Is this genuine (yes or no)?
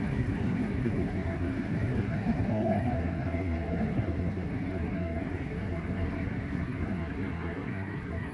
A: no